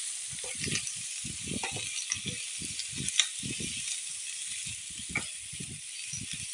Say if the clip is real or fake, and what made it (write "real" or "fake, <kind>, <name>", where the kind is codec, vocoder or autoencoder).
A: real